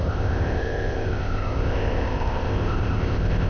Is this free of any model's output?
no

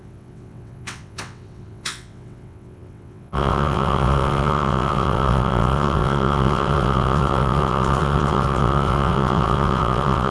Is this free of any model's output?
no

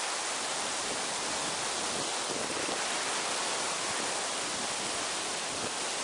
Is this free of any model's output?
yes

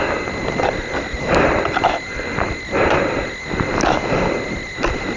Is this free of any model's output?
yes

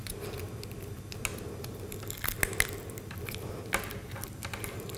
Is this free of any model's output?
yes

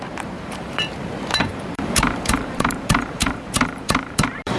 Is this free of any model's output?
no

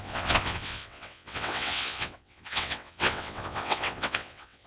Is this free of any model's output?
no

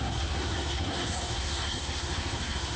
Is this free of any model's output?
no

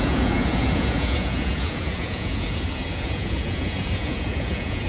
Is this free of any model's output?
no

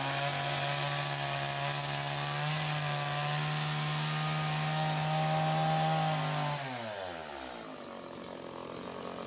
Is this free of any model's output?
yes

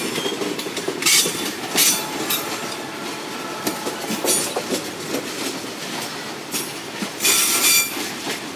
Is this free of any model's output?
yes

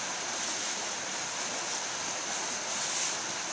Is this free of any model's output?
yes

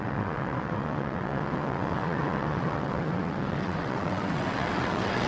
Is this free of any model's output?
no